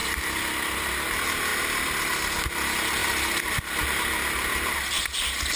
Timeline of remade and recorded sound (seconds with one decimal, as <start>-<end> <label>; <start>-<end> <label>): 0.0-5.6 recorded